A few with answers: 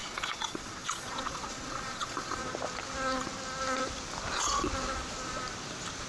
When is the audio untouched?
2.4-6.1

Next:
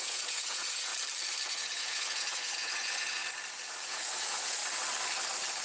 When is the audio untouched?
0.9-1.5; 3.2-3.9; 4.6-5.6

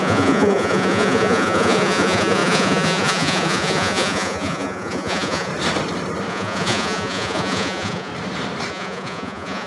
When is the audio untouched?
5.5-6.3; 8.1-8.7

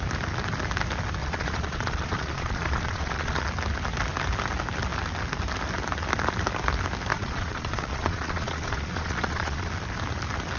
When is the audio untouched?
0.0-1.2; 3.4-7.1; 9.7-10.6

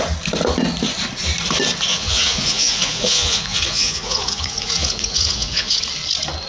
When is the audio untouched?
0.0-1.9; 5.8-6.5